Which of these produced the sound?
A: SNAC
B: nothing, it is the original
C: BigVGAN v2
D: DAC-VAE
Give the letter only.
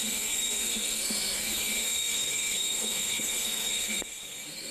A